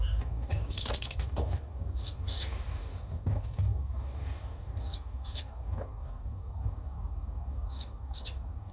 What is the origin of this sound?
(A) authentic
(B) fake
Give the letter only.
B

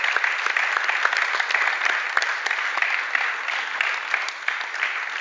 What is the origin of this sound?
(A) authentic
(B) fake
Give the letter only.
A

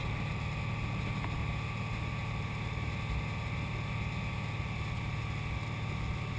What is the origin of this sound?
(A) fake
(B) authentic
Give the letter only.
B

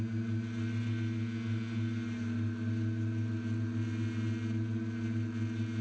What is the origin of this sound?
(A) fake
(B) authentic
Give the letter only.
B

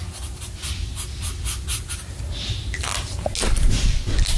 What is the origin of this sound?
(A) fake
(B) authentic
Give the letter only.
B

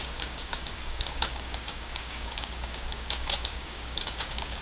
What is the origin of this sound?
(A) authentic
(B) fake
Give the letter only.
B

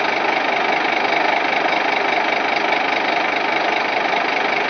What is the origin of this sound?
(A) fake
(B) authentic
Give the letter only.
B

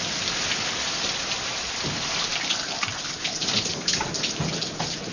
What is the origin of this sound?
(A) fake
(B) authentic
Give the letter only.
B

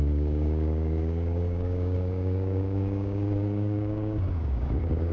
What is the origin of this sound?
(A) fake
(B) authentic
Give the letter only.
A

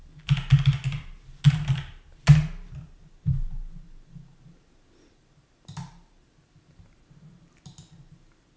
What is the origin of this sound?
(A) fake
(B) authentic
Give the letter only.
B